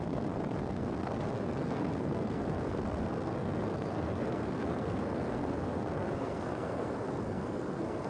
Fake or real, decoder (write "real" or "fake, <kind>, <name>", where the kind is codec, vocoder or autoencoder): fake, codec, SNAC